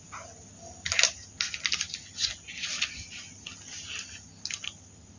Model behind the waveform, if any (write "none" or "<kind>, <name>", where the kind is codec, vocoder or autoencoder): none